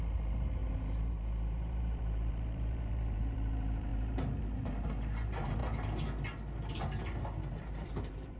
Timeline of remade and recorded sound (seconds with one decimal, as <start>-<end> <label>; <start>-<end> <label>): 0.0-5.6 remade; 5.6-7.5 recorded; 7.5-8.4 remade